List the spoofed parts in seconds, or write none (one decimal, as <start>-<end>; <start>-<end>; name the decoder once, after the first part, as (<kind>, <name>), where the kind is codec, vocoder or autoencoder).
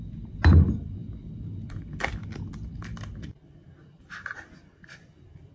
none